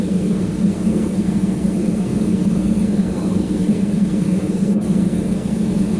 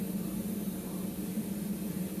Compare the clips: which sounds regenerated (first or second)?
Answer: first